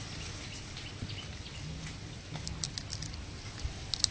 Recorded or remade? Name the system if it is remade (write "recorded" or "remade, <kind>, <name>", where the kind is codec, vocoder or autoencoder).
recorded